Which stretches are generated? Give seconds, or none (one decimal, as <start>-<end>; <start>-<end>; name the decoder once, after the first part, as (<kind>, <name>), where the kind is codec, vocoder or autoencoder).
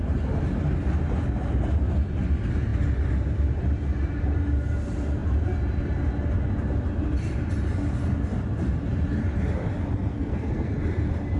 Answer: 10.1-10.7 (codec, SNAC)